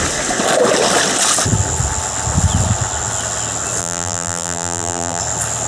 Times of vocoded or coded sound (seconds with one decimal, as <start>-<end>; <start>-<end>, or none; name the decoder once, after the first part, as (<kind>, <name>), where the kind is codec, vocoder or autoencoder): 3.8-5.2 (vocoder, BigVGAN v2)